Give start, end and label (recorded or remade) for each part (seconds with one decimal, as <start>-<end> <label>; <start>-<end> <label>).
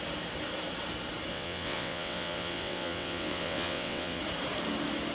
0.0-1.3 recorded; 1.3-4.2 remade; 4.2-5.1 recorded